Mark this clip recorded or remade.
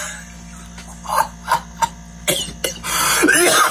recorded